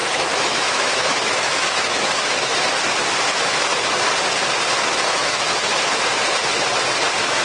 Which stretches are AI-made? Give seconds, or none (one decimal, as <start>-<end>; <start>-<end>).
0.0-2.2; 5.1-5.6